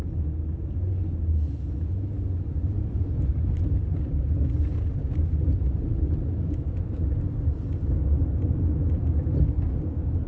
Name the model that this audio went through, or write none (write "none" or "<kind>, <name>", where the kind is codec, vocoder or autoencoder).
none